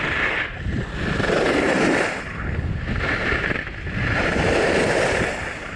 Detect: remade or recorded recorded